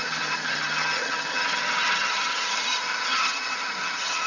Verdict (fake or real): fake